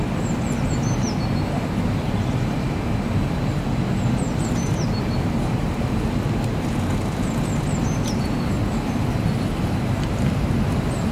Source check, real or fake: real